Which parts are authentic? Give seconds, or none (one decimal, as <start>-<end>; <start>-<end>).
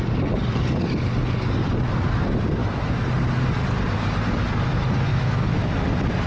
0.0-2.6; 3.1-5.1; 5.7-6.3